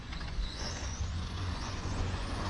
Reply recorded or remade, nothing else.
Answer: remade